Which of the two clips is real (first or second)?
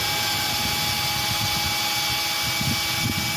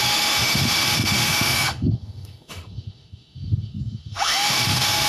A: first